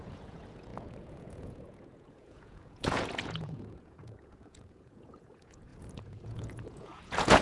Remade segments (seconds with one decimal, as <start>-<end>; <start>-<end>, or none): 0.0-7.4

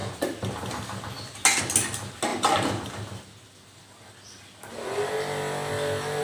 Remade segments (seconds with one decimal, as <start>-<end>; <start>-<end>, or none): none

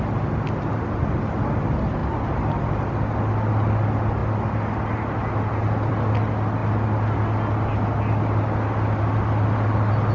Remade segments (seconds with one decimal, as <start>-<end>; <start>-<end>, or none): none